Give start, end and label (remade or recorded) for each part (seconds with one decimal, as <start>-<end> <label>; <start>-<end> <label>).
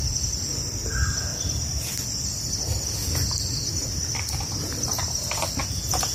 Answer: 0.0-6.1 recorded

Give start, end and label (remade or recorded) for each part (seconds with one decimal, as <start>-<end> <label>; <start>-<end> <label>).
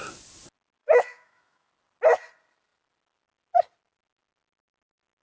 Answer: 0.0-0.8 recorded; 0.8-1.7 remade; 1.7-5.2 recorded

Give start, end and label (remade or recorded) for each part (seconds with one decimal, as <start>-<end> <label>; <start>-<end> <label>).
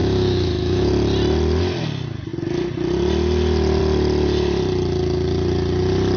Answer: 0.0-0.9 remade; 0.9-6.2 recorded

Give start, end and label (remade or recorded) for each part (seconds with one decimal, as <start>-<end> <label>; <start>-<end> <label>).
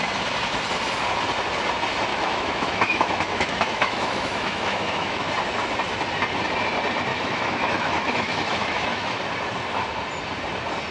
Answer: 0.0-2.1 recorded; 2.1-5.3 remade; 5.3-7.1 recorded; 7.1-9.2 remade; 9.2-10.9 recorded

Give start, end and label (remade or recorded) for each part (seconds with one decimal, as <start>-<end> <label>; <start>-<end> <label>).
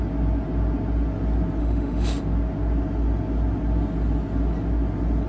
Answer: 0.0-1.6 recorded; 1.6-2.2 remade; 2.2-5.3 recorded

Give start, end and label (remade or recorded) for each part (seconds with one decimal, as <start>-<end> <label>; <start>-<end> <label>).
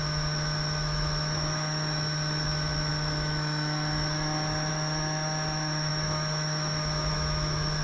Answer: 0.0-7.8 remade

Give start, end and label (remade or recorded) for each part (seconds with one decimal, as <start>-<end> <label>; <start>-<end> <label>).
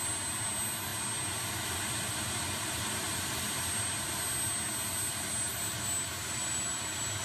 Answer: 0.0-7.2 recorded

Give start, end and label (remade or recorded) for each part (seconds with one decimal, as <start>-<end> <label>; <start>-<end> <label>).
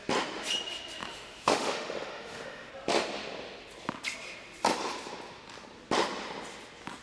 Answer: 0.0-1.0 recorded; 1.0-2.7 remade; 2.7-7.0 recorded